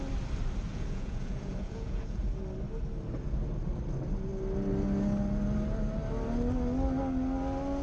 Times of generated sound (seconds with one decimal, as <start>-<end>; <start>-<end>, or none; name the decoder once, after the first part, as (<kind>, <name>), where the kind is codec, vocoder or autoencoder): 0.7-2.2 (vocoder, Vocos)